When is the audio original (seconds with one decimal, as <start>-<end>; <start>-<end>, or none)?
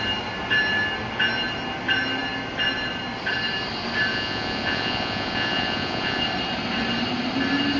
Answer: 0.0-4.1; 6.2-7.8